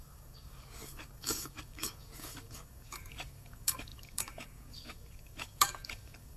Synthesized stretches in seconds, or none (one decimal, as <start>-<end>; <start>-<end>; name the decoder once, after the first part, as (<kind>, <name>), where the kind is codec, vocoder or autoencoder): 0.0-6.4 (codec, DAC)